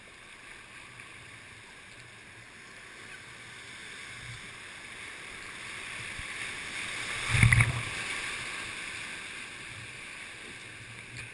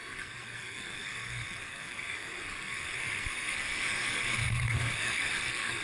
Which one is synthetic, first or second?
second